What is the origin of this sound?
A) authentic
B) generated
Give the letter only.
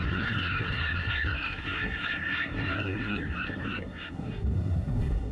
B